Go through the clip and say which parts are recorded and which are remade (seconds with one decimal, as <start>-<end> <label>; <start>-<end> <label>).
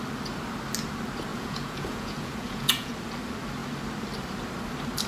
0.0-1.3 recorded; 1.3-2.9 remade; 2.9-5.1 recorded